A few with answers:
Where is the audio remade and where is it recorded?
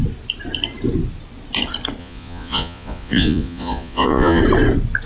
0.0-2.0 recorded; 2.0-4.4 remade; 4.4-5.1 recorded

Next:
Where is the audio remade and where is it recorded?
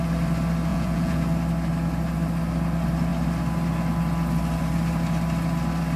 0.0-0.7 recorded; 0.7-1.2 remade; 1.2-6.0 recorded